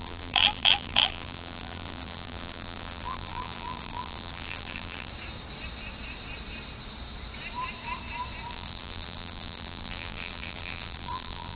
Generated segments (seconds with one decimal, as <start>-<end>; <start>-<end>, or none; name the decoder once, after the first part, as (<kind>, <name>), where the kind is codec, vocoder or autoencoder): 0.0-5.1 (vocoder, BigVGAN v2); 8.5-11.5